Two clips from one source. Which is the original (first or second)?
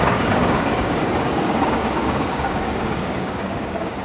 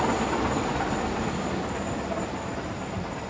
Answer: second